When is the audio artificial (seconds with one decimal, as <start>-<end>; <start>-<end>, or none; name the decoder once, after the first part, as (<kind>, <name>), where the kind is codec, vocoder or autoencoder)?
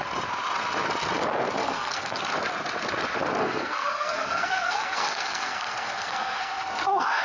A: 1.6-2.2 (codec, SNAC); 3.4-7.2